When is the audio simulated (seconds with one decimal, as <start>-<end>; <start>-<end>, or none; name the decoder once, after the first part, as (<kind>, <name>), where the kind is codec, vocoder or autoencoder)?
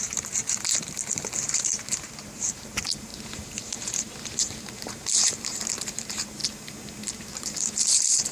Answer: 0.0-6.4 (vocoder, BigVGAN v2); 7.0-8.3